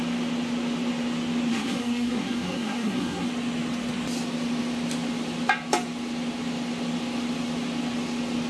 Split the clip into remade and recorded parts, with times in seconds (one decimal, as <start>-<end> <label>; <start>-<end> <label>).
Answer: 0.0-1.5 recorded; 1.5-3.3 remade; 3.3-8.5 recorded